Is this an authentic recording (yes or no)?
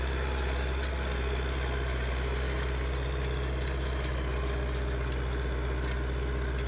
yes